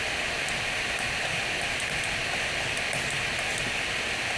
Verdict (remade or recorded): recorded